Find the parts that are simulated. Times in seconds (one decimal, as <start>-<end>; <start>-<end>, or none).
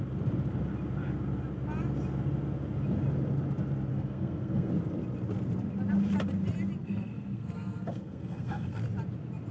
3.9-4.7; 6.8-8.8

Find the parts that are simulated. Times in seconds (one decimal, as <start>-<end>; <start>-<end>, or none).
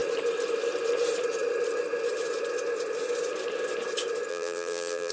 4.3-5.1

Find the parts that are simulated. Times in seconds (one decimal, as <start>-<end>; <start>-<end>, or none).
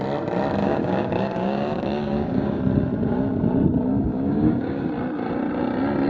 0.6-2.6; 3.9-4.9